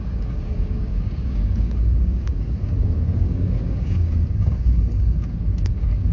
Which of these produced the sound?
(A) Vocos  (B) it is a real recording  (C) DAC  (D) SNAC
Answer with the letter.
C